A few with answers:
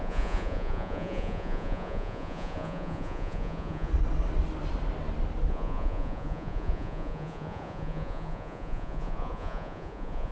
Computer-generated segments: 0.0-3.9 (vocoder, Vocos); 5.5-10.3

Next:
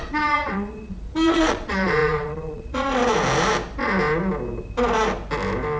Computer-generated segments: 0.0-3.0 (vocoder, Vocos)

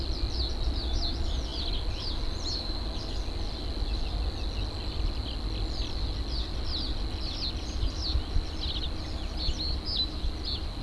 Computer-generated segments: none

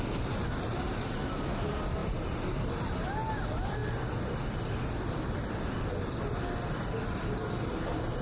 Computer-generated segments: none